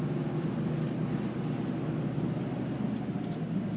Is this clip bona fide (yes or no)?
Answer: yes